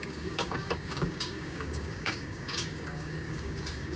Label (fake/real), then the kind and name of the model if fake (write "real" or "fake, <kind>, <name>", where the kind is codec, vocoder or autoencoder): fake, codec, DAC